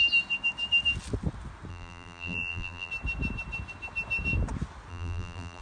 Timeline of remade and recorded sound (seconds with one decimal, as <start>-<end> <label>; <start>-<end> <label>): 0.0-1.7 recorded; 1.7-2.9 remade; 2.9-4.9 recorded; 4.9-5.6 remade